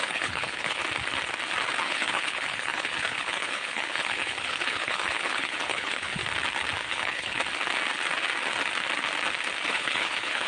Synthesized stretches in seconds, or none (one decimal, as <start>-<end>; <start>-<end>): 0.0-0.8; 1.8-6.2; 6.9-7.4; 9.7-10.5